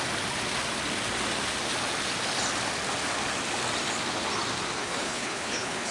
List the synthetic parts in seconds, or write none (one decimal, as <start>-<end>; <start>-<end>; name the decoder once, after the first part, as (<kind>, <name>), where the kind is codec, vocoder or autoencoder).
4.8-5.9 (codec, HILCodec)